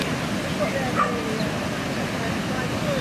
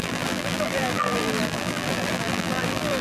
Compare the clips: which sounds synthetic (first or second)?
second